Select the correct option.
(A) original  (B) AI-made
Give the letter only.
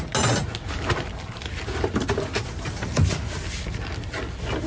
A